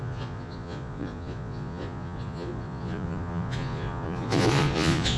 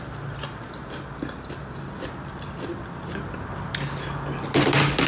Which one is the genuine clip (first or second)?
second